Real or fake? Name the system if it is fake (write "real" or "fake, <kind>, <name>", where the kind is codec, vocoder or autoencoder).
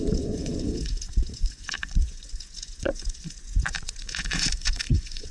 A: fake, vocoder, Vocos